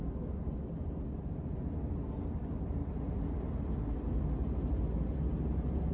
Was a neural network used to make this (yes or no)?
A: no